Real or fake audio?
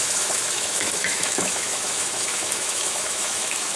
fake